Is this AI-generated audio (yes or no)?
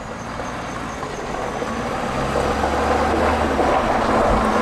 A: no